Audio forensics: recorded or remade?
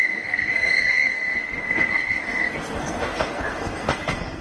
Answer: remade